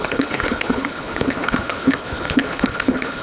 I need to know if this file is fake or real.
fake